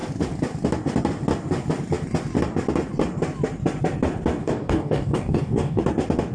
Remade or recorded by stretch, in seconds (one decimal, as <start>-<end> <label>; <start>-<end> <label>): 0.0-4.4 recorded; 4.4-5.8 remade; 5.8-6.3 recorded